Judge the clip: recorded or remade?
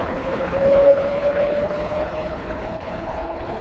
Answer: remade